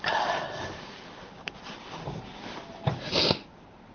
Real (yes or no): yes